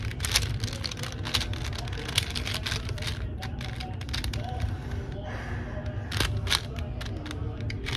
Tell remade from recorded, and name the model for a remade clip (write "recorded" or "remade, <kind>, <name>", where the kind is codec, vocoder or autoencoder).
recorded